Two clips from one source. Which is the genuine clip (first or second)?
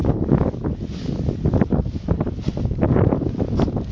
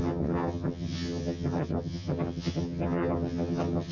first